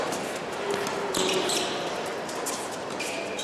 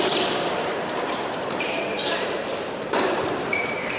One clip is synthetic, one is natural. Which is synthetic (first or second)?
second